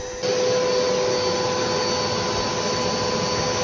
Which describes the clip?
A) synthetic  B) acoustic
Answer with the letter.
B